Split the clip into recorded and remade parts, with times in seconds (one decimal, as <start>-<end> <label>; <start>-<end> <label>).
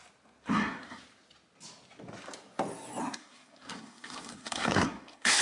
0.0-0.5 recorded; 0.5-1.0 remade; 1.0-3.0 recorded; 3.0-5.4 remade